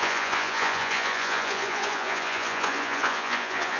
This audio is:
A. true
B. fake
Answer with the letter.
B